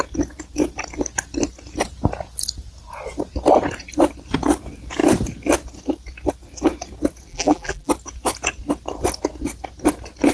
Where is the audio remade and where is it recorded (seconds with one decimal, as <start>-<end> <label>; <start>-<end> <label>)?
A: 0.0-7.3 recorded; 7.3-7.9 remade; 7.9-10.3 recorded